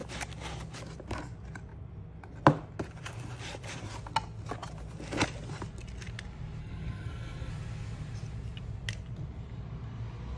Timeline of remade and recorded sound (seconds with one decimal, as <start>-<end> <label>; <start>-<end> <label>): 0.0-6.6 recorded; 6.6-7.5 remade; 7.5-10.4 recorded